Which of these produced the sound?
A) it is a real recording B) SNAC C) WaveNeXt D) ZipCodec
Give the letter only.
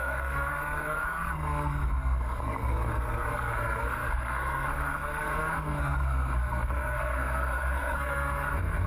B